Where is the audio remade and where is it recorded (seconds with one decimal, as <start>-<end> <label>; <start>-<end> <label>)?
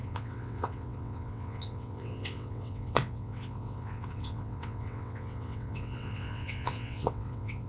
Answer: 0.0-7.7 remade